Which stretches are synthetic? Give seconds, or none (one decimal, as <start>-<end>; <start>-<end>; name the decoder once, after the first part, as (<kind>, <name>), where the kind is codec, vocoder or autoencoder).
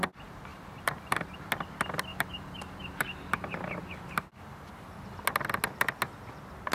0.5-1.5 (vocoder, BigVGAN v2); 2.1-5.2